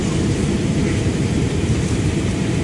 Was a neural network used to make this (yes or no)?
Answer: yes